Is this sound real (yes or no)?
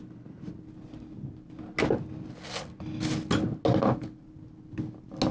yes